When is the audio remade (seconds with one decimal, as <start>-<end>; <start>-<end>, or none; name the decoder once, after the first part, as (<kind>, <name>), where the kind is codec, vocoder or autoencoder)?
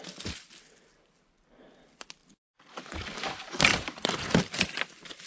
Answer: 3.7-5.3 (vocoder, BigVGAN v2)